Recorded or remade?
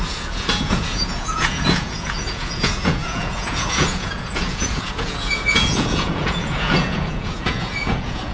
remade